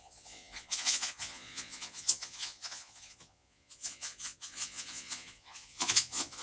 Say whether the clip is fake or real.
fake